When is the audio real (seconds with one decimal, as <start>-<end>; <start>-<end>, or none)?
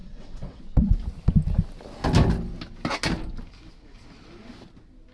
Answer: 0.6-5.1